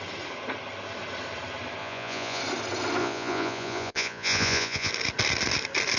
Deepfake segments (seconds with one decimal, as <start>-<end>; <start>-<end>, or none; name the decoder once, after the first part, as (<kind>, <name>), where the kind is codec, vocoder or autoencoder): 1.8-2.4 (vocoder, Vocos); 3.0-4.9